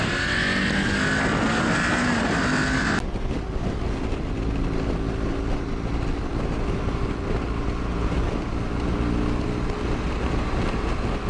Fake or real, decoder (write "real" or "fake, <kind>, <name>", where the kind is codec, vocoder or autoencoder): real